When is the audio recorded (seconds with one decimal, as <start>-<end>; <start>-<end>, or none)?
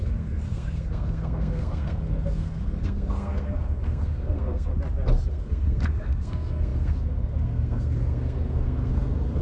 4.7-5.3